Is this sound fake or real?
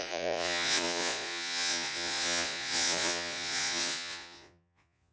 fake